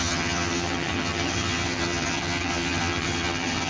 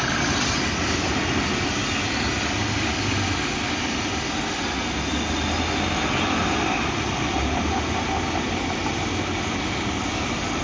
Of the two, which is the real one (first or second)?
second